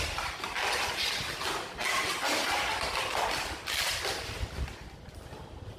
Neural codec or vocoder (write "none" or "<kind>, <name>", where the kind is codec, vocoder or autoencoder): none